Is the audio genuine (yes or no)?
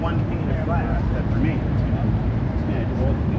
no